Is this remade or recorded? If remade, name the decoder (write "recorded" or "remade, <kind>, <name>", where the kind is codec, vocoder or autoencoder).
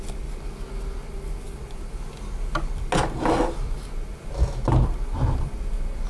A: recorded